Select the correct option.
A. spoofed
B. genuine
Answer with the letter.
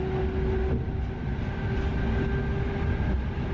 B